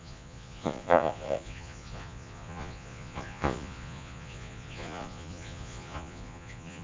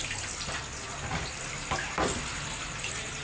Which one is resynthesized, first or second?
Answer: first